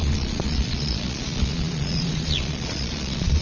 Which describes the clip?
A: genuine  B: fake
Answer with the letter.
B